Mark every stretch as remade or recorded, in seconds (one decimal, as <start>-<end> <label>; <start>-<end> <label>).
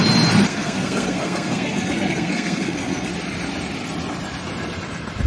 0.0-0.5 recorded; 0.5-3.1 remade; 3.1-5.3 recorded